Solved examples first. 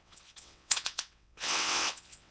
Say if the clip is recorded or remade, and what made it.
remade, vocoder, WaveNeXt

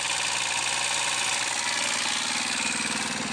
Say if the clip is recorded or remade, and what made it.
recorded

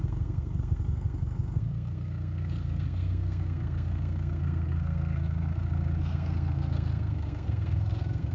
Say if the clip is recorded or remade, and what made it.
remade, codec, SNAC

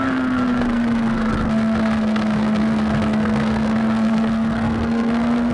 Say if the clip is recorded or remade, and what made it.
remade, codec, SNAC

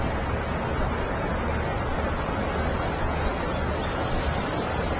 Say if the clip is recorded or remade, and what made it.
recorded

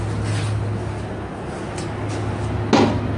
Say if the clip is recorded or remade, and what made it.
recorded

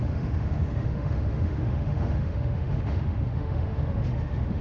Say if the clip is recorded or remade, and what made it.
remade, autoencoder, DAC-VAE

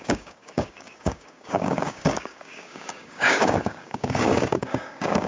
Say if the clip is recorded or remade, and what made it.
remade, codec, DAC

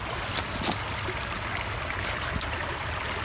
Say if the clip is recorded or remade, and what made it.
recorded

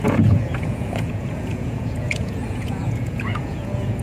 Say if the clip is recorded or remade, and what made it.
remade, vocoder, Vocos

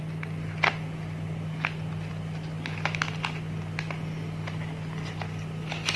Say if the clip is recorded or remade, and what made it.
recorded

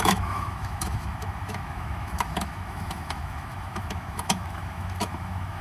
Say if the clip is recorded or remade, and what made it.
remade, autoencoder, DAC-VAE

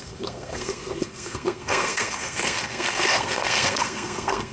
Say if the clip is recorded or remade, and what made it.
remade, codec, SNAC